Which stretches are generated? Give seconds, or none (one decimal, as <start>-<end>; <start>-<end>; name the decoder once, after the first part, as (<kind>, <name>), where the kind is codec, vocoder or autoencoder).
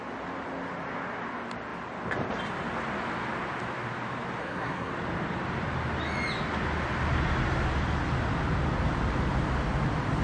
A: 4.4-4.9 (codec, SNAC)